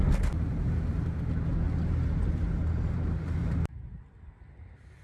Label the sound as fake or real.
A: real